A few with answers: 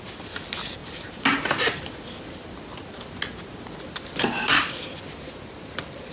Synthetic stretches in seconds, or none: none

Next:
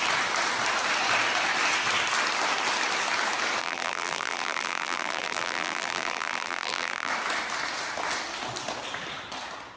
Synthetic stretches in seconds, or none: 3.6-7.1 (vocoder, BigVGAN v2)

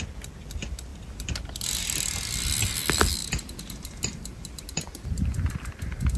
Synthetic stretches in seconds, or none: 0.9-1.8 (vocoder, BigVGAN v2); 3.2-5.8

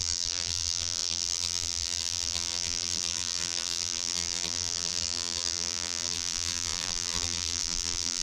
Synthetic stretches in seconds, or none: 0.0-8.2 (vocoder, BigVGAN v2)